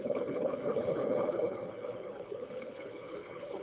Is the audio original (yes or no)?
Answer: no